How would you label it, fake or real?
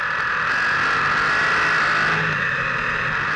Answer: real